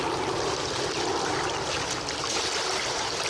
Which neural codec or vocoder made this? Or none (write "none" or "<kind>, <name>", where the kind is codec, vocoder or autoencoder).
none